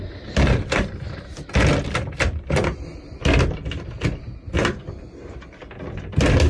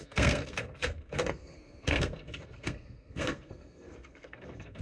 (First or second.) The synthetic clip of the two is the second